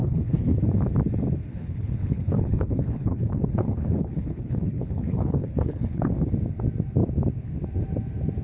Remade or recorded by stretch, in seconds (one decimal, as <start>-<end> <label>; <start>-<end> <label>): 0.0-0.6 remade; 0.6-1.5 recorded; 1.5-6.1 remade; 6.1-8.4 recorded